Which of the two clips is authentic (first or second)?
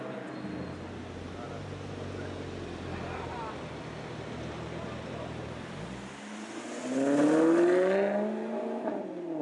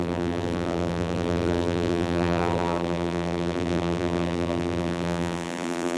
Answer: first